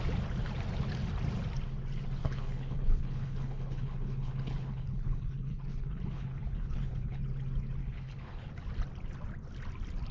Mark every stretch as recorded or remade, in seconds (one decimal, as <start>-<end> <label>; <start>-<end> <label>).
0.0-2.2 recorded; 2.2-7.2 remade; 7.2-7.8 recorded; 7.8-8.5 remade; 8.5-10.1 recorded

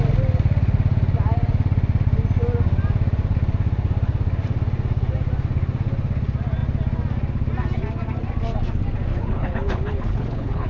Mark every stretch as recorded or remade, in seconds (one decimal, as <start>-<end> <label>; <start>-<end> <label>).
0.0-9.1 recorded; 9.1-10.7 remade

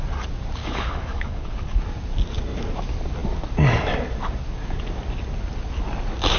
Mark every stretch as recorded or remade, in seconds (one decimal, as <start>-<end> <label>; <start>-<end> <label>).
0.0-0.6 recorded; 0.6-1.8 remade; 1.8-6.4 recorded

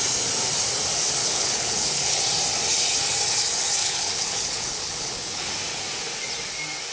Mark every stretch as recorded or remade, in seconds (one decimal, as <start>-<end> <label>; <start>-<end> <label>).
0.0-1.2 recorded; 1.2-2.2 remade; 2.2-3.8 recorded; 3.8-5.5 remade; 5.5-6.9 recorded

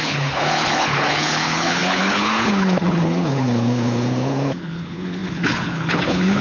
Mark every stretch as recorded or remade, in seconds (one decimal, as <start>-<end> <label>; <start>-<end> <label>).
0.0-6.4 remade

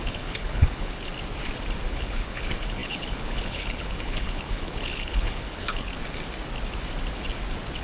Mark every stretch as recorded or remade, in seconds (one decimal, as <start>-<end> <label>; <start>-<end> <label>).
0.0-1.1 remade; 1.1-1.9 recorded; 1.9-5.9 remade; 5.9-7.8 recorded

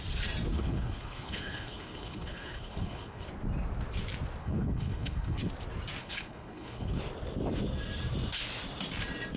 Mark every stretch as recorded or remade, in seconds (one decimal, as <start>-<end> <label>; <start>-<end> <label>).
0.0-0.5 recorded; 0.5-3.3 remade; 3.3-4.4 recorded; 4.4-5.5 remade; 5.5-6.0 recorded; 6.0-7.0 remade; 7.0-9.4 recorded